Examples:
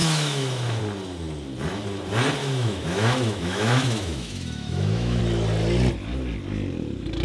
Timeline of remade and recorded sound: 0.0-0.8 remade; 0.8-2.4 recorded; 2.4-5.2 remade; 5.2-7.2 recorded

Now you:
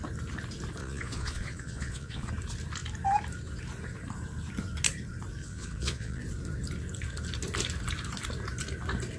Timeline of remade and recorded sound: 0.0-0.8 recorded; 0.8-2.3 remade; 2.3-5.4 recorded; 5.4-6.2 remade; 6.2-9.2 recorded

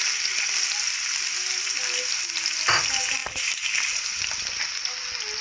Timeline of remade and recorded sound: 0.0-5.4 recorded

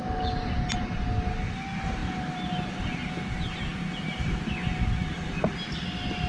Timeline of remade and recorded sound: 0.0-6.3 recorded

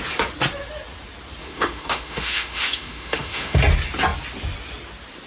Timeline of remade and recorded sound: 0.0-1.4 recorded; 1.4-3.6 remade; 3.6-5.3 recorded

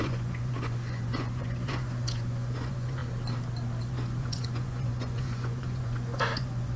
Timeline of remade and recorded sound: 0.0-3.0 remade; 3.0-3.8 recorded; 3.8-6.8 remade

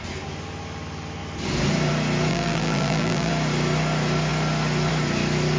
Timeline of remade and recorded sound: 0.0-2.3 recorded; 2.3-3.3 remade; 3.3-5.6 recorded

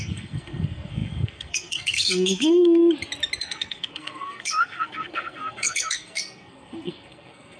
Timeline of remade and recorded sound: 0.0-2.8 remade; 2.8-3.4 recorded; 3.4-7.6 remade